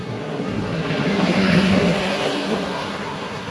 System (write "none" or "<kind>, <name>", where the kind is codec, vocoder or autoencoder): codec, SNAC